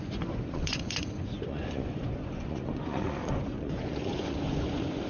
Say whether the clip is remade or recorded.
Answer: remade